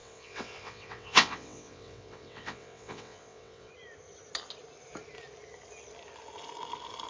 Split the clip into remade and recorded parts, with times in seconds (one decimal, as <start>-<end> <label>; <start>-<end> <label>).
0.0-3.7 remade; 3.7-7.1 recorded